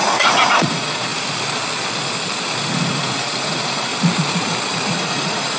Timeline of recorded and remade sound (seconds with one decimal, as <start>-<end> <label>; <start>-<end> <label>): 0.0-1.1 remade; 1.1-2.7 recorded; 2.7-3.9 remade; 3.9-4.9 recorded; 4.9-5.6 remade